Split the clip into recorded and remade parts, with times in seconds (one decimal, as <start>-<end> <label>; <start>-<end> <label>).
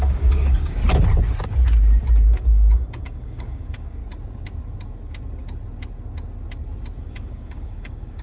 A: 0.0-0.8 remade; 0.8-2.3 recorded; 2.3-4.0 remade; 4.0-7.0 recorded; 7.0-8.2 remade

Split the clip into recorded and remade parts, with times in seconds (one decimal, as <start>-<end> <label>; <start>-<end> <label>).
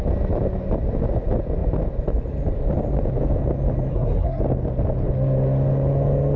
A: 0.0-3.9 recorded; 3.9-4.4 remade; 4.4-6.4 recorded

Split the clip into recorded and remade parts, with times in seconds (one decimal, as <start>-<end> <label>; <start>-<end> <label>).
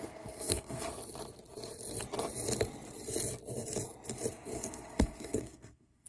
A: 0.0-0.9 remade; 0.9-4.3 recorded; 4.3-6.1 remade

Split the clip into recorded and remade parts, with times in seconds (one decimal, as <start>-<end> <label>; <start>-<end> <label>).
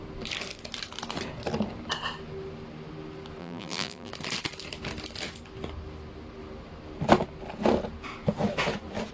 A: 0.0-3.4 recorded; 3.4-4.1 remade; 4.1-9.1 recorded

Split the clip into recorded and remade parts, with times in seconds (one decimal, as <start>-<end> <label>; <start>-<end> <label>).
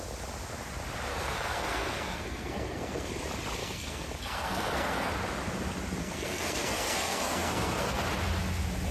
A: 0.0-1.1 recorded; 1.1-3.1 remade; 3.1-3.6 recorded; 3.6-5.1 remade; 5.1-6.0 recorded; 6.0-8.0 remade; 8.0-8.9 recorded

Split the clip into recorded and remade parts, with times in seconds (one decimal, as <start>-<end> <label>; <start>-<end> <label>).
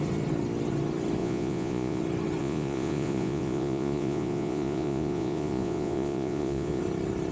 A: 0.0-1.2 recorded; 1.2-2.0 remade; 2.0-2.4 recorded; 2.4-6.8 remade; 6.8-7.3 recorded